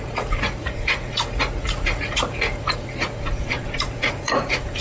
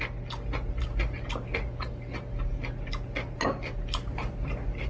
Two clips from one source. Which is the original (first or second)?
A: second